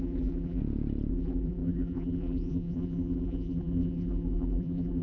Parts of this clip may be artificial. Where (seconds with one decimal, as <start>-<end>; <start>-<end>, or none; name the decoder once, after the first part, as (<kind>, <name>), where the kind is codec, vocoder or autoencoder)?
0.0-0.6 (vocoder, BigVGAN v2); 1.1-5.0